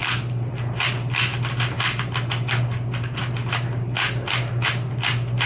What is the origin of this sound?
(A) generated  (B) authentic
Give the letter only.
B